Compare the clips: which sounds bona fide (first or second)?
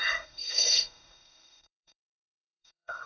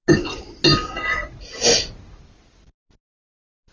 second